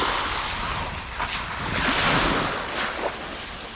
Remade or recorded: recorded